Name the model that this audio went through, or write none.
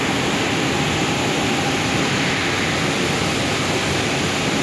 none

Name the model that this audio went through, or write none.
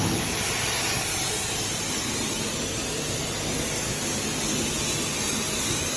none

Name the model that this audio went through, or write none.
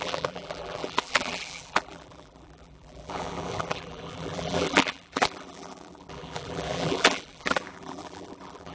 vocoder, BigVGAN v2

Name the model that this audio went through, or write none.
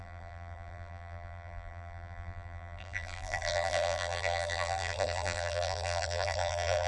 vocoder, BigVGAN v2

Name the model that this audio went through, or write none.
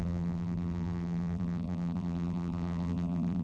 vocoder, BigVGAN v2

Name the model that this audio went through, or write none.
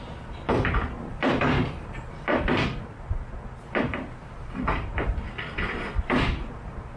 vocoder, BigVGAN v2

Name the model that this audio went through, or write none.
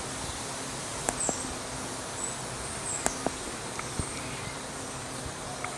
none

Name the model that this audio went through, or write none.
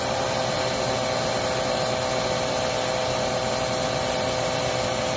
none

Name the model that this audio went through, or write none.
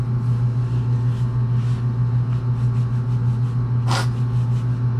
none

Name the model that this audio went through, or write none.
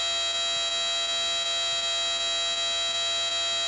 none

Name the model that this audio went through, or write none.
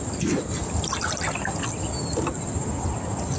none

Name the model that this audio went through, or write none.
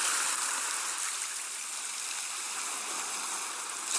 none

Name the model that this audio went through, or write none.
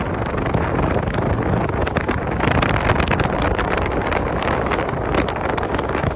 vocoder, BigVGAN v2